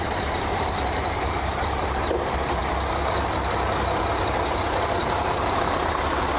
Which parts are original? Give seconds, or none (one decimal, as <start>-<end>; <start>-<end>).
2.6-5.0